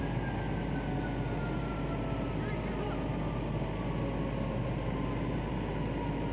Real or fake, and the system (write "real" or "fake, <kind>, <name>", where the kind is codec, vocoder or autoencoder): real